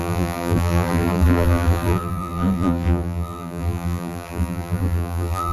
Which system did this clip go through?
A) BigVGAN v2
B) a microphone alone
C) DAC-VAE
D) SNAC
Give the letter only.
A